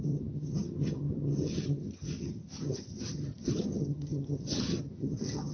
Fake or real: fake